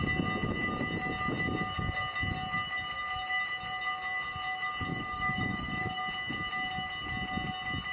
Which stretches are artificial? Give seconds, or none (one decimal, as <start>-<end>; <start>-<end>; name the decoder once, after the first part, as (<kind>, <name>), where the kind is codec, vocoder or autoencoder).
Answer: 4.9-6.0 (codec, DAC)